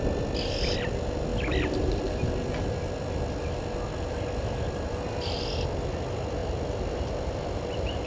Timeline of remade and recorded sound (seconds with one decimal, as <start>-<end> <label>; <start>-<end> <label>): 0.0-8.1 recorded